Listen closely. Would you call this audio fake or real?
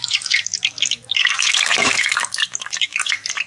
fake